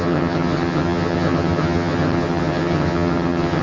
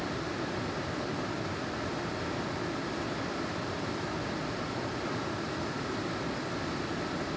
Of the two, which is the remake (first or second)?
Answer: first